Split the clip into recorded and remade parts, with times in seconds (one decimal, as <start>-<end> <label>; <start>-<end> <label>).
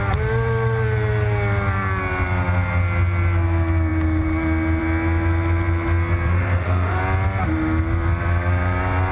0.0-6.3 recorded; 6.3-7.0 remade; 7.0-9.1 recorded